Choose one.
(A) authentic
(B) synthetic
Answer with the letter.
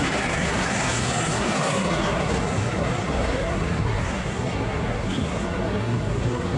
B